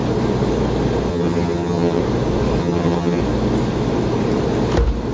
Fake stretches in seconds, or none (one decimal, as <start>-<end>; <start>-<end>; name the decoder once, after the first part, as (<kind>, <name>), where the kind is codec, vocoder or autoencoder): 1.1-2.0 (vocoder, HiFi-GAN); 2.6-3.2

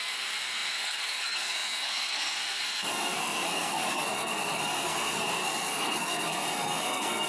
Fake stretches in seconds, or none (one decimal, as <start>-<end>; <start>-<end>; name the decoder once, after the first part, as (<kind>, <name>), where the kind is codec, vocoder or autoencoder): 0.0-7.3 (codec, SNAC)

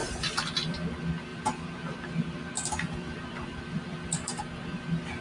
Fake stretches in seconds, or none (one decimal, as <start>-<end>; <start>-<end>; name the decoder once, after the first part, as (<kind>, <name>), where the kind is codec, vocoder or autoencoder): 0.0-0.7 (vocoder, BigVGAN v2); 1.3-4.4